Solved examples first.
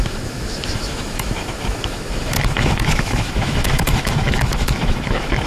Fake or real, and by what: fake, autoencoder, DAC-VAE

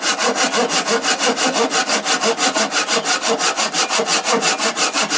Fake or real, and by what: real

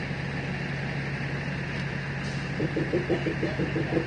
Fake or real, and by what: real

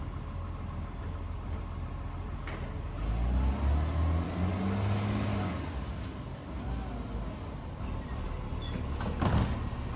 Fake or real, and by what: real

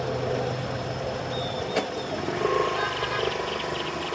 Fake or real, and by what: real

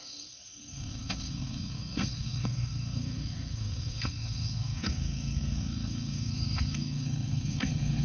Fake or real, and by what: fake, codec, SNAC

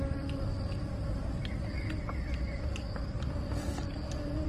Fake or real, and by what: real